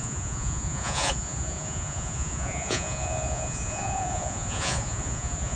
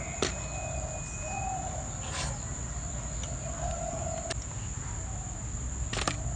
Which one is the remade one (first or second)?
first